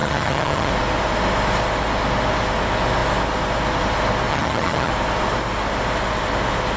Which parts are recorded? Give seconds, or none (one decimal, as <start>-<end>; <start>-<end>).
0.7-4.3; 4.9-6.8